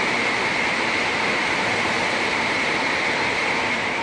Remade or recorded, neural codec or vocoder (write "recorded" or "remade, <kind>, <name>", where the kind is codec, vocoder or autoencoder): remade, vocoder, BigVGAN v2